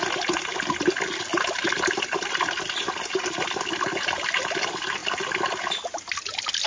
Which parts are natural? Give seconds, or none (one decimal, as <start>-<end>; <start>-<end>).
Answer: 0.0-6.7